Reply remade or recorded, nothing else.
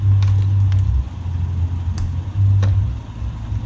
recorded